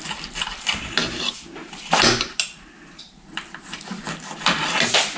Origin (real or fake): real